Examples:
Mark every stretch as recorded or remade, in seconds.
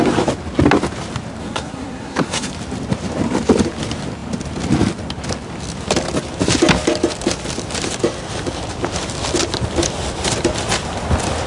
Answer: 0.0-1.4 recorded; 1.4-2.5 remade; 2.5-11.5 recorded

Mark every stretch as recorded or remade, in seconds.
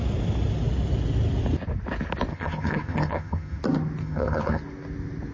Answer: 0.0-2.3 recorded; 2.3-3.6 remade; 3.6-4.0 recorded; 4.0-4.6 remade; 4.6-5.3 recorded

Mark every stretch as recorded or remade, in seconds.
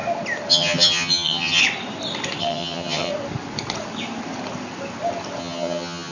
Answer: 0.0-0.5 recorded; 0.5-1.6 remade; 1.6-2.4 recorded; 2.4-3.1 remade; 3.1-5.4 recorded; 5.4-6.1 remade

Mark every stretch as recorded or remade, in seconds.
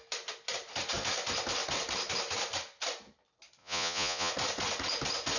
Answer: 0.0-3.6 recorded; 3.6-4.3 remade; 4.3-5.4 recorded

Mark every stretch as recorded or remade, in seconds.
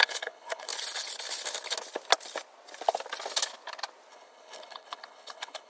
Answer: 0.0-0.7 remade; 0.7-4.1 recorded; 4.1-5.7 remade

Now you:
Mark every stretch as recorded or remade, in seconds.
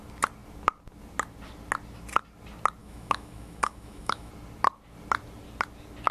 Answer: 0.0-2.8 recorded; 2.8-4.3 remade; 4.3-6.1 recorded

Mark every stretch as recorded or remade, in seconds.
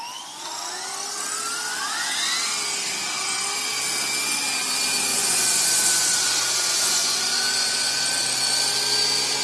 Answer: 0.0-5.1 recorded; 5.1-8.0 remade; 8.0-9.4 recorded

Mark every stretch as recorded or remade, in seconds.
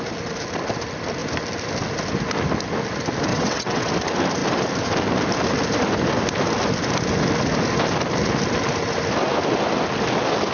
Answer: 0.0-3.3 recorded; 3.3-3.9 remade; 3.9-10.5 recorded